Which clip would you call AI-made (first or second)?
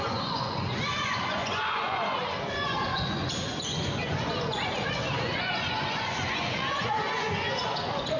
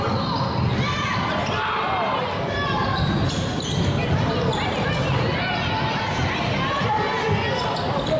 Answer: first